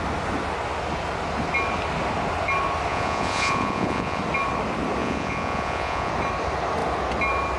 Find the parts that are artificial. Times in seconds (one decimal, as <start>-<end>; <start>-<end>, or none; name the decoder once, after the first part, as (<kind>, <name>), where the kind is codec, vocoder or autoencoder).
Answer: 2.9-4.2 (vocoder, Vocos); 5.0-6.1

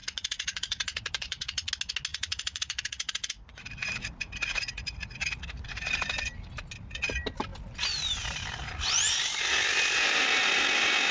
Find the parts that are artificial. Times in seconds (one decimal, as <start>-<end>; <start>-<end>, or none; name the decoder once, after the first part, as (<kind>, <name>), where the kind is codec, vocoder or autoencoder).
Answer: 0.0-1.7 (vocoder, Vocos); 2.1-5.9

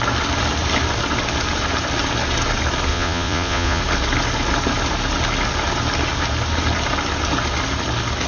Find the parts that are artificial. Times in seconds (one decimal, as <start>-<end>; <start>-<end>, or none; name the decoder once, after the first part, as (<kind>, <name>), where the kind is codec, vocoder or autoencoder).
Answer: 2.9-3.8 (vocoder, Vocos)